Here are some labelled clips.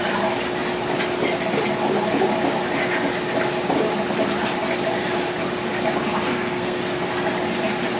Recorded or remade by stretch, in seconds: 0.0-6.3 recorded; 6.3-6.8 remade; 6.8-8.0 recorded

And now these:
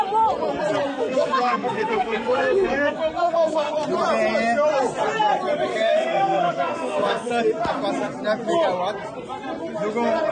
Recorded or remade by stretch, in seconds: 0.0-0.9 recorded; 0.9-3.7 remade; 3.7-5.7 recorded; 5.7-7.3 remade; 7.3-10.3 recorded

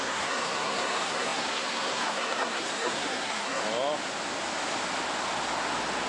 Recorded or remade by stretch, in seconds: 0.0-3.6 remade; 3.6-6.1 recorded

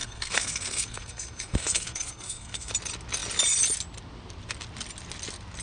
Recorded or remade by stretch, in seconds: 0.0-2.7 remade; 2.7-5.6 recorded

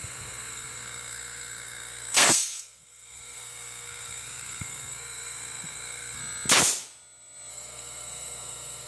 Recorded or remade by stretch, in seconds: 0.0-6.2 remade; 6.2-7.5 recorded; 7.5-8.9 remade